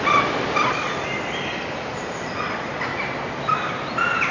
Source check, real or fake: real